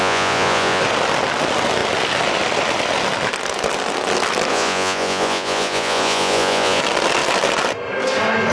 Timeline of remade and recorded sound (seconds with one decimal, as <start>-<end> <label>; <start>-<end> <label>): 0.0-0.8 remade; 0.8-4.5 recorded; 4.5-6.8 remade; 6.8-8.5 recorded